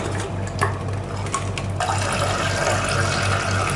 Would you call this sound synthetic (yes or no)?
no